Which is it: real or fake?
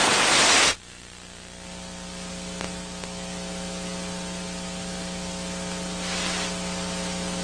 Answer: real